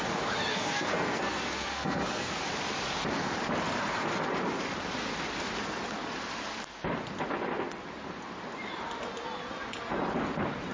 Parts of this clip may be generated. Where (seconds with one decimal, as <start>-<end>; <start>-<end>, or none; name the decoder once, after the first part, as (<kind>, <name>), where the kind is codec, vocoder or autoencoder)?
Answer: 0.5-2.4 (codec, SNAC)